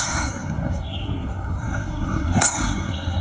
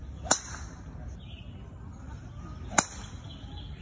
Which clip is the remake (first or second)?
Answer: first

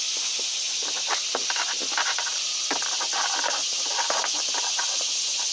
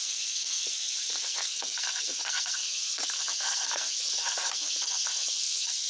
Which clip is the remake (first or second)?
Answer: second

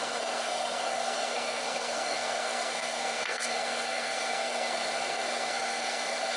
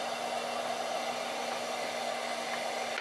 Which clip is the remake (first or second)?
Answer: first